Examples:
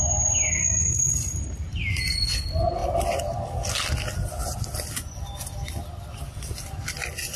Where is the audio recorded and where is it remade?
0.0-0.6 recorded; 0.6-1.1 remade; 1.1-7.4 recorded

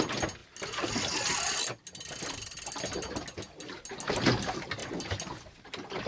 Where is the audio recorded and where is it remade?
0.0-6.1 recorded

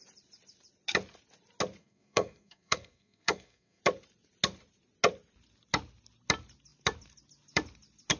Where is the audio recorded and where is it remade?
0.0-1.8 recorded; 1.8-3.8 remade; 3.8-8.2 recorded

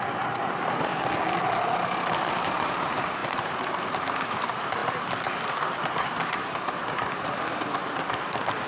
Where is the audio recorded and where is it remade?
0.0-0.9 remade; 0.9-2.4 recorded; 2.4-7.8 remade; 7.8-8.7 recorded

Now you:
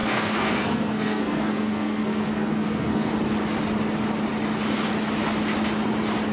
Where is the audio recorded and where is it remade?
0.0-3.1 remade; 3.1-6.3 recorded